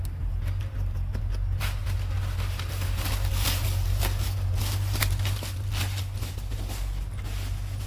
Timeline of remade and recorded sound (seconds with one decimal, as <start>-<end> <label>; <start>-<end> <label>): 0.0-7.9 recorded